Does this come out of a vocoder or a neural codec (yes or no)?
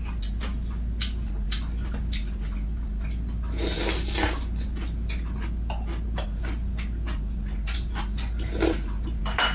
no